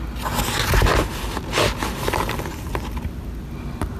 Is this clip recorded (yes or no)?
yes